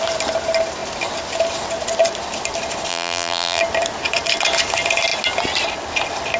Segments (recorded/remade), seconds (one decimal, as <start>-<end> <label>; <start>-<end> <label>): 0.0-2.9 recorded; 2.9-3.6 remade; 3.6-6.4 recorded